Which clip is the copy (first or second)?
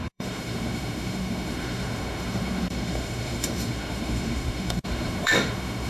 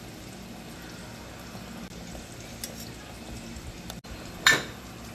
first